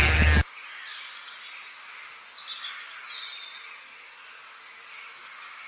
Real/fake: real